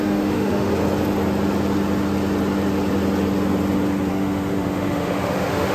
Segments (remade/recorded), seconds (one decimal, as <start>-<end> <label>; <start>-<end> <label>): 0.0-0.7 remade; 0.7-4.1 recorded; 4.1-5.7 remade